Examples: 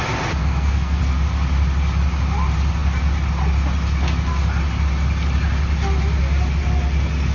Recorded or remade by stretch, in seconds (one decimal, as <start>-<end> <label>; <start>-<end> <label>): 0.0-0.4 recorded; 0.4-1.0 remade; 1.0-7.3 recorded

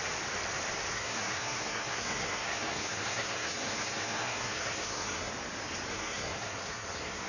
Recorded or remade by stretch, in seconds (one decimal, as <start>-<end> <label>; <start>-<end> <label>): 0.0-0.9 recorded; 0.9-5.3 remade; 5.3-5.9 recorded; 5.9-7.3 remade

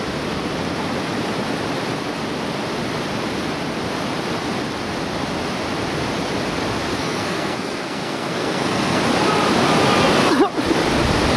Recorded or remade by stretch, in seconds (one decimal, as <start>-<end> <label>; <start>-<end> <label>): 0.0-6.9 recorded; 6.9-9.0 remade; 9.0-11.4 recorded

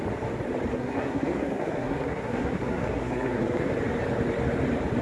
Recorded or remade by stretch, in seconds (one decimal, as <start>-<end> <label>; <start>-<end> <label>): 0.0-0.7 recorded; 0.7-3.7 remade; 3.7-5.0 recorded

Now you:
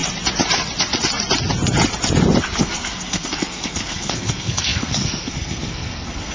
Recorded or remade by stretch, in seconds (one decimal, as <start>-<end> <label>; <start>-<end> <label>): 0.0-2.6 recorded; 2.6-6.3 remade